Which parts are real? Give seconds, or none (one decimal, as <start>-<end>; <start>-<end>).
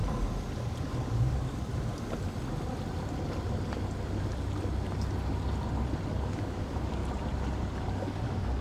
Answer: 0.0-0.8; 1.7-6.1; 7.0-7.9